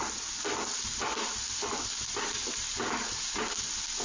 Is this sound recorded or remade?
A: recorded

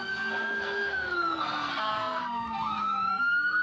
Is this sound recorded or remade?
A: remade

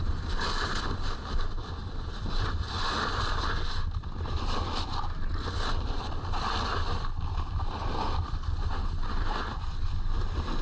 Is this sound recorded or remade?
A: recorded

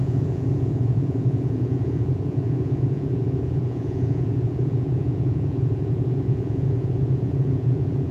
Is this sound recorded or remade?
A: remade